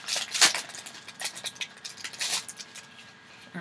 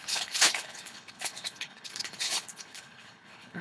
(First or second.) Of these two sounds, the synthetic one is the second